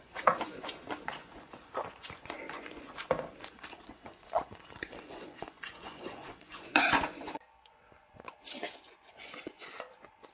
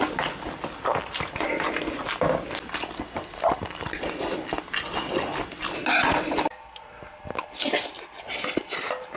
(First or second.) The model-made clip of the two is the first